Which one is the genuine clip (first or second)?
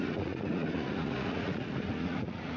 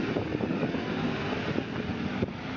second